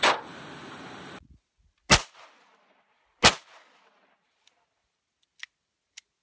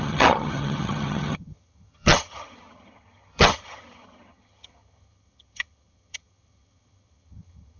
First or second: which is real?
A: first